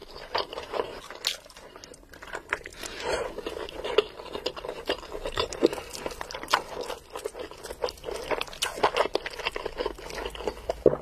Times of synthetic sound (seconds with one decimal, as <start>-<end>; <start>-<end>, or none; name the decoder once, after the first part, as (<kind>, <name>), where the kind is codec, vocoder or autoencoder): 0.0-1.0 (vocoder, BigVGAN v2); 2.7-5.6